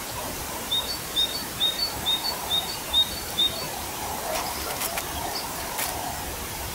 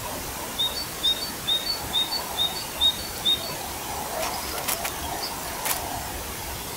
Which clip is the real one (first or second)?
second